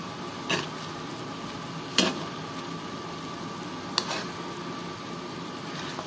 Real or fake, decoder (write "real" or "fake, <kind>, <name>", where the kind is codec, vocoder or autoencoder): real